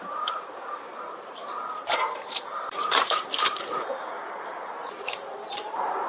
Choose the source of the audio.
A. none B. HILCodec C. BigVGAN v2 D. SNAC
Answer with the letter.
C